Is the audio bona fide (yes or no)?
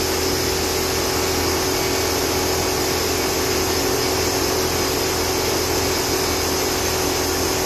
yes